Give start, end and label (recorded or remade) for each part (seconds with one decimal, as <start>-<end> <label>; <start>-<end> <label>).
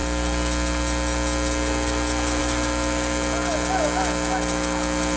0.0-5.2 recorded